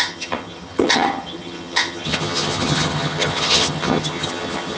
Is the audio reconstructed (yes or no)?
yes